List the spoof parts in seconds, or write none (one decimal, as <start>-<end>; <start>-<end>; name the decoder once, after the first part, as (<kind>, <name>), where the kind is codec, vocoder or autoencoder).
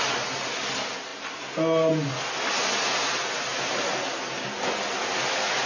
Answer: none